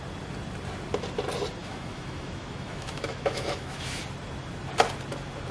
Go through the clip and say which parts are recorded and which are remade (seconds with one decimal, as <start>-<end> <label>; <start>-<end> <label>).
0.0-1.6 recorded; 1.6-4.0 remade; 4.0-5.5 recorded